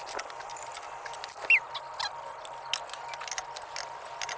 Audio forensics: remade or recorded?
recorded